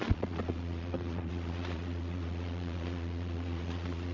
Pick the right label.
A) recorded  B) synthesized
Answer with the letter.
B